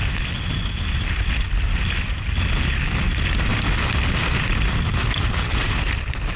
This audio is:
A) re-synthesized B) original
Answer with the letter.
B